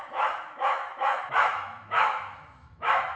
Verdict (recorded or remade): remade